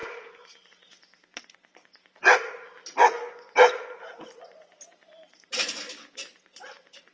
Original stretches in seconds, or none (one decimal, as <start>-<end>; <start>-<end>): 2.8-3.3